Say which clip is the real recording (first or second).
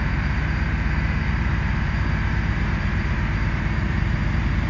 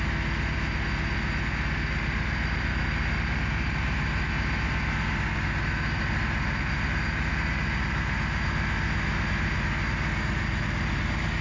second